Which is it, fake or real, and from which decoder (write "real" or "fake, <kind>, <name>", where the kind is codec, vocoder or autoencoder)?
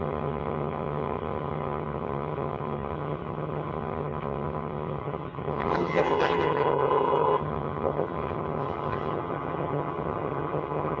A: fake, vocoder, HiFi-GAN